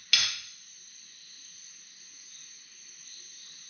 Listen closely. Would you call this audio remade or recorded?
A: recorded